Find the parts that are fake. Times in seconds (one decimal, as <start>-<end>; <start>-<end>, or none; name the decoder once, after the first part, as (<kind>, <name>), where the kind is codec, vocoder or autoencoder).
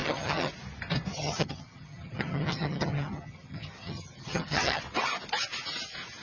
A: 0.0-0.5 (vocoder, HiFi-GAN); 1.1-4.8